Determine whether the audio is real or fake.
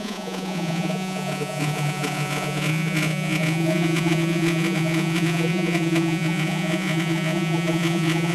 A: fake